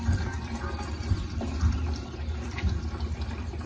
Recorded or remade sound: remade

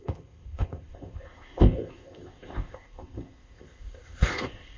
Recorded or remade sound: remade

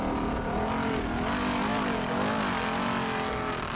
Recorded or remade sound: recorded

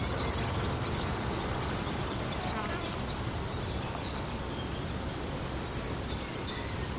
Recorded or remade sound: remade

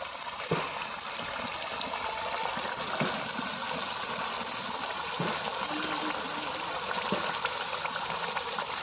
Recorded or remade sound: recorded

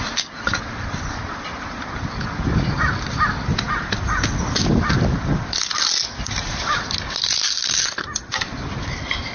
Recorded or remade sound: recorded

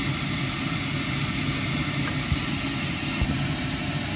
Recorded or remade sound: recorded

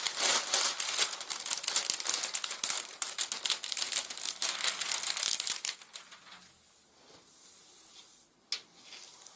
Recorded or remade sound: recorded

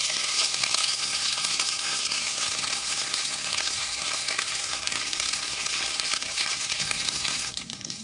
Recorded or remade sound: remade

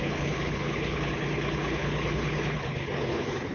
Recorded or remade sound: remade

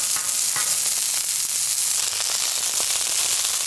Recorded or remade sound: recorded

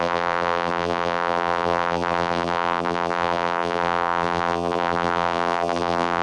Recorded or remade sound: remade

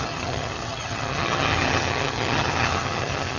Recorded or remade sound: remade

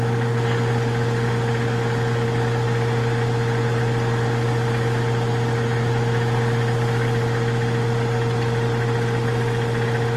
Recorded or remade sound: recorded